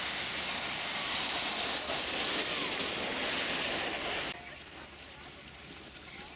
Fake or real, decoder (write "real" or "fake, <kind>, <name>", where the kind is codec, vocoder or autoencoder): real